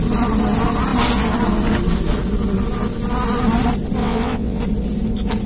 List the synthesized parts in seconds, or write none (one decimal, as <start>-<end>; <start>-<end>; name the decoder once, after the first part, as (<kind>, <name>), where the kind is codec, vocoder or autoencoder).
4.0-4.6 (vocoder, WaveNeXt)